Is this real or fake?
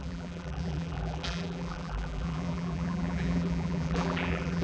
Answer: fake